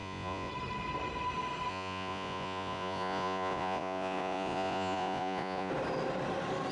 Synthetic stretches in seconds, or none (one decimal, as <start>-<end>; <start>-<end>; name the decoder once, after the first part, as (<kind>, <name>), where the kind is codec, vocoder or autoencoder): 0.0-0.5 (vocoder, Vocos); 1.7-5.7